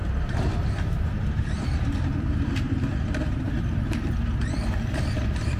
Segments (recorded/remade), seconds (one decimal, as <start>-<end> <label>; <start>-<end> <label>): 0.0-5.6 remade